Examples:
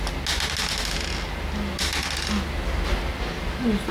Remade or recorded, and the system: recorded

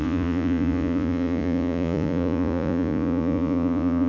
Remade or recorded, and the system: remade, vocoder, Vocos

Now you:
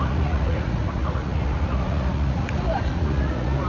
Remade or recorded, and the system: remade, vocoder, Vocos